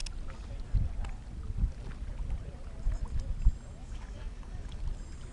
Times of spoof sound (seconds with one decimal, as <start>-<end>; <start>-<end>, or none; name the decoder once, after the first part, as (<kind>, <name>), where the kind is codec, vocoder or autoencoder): 3.8-4.8 (codec, DAC)